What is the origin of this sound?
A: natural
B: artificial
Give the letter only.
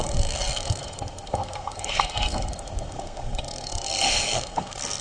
B